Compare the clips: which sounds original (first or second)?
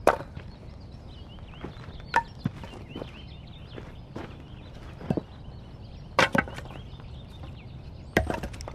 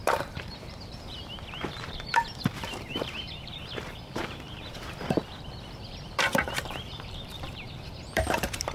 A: first